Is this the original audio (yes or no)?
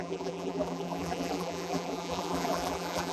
no